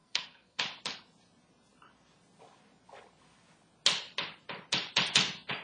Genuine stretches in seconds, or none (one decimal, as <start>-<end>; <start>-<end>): 0.6-5.6